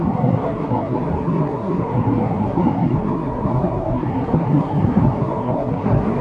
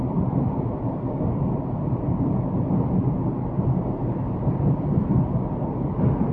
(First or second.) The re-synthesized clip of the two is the first